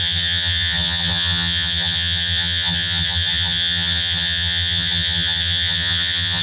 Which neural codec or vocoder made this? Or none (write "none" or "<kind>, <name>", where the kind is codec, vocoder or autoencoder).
vocoder, HiFi-GAN